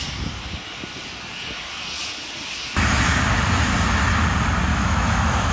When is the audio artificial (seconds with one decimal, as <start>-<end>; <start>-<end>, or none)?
4.7-5.5